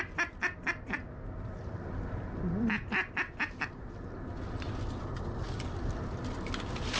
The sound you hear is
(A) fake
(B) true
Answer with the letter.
B